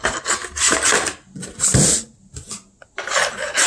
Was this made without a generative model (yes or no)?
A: yes